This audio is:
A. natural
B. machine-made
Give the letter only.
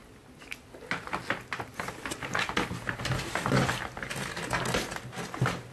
A